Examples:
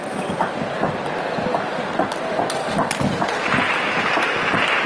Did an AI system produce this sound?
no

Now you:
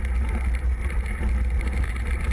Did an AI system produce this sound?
no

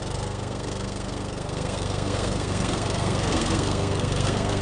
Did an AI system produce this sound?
yes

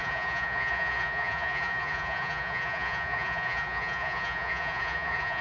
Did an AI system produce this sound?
yes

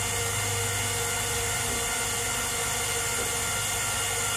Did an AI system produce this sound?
no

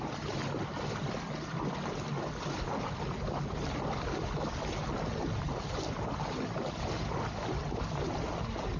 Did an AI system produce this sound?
no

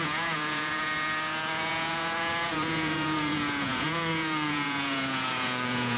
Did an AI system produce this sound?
yes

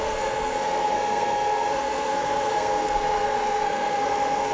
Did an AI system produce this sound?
yes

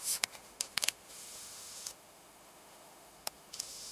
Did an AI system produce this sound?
yes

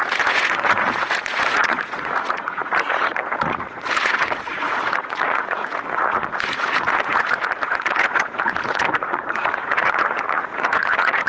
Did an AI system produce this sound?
yes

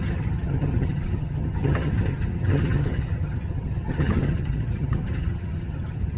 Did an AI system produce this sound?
yes